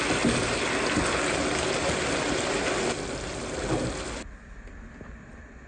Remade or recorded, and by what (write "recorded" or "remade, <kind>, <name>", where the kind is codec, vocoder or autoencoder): recorded